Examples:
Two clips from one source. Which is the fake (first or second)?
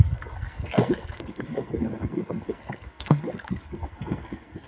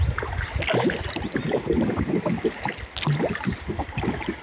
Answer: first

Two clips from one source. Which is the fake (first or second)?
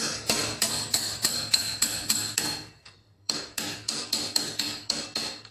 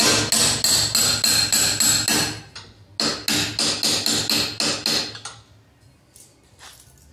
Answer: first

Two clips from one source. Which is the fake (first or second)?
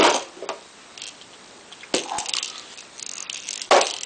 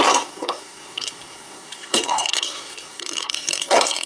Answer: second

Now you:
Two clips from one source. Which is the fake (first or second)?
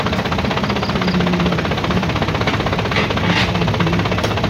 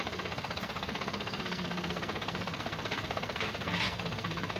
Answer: second